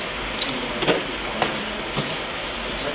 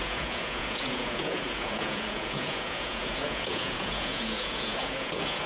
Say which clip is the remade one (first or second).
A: second